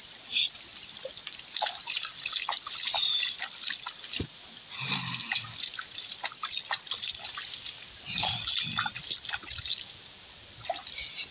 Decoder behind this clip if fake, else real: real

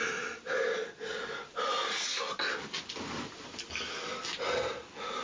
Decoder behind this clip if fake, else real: real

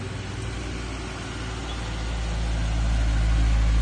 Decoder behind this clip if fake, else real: real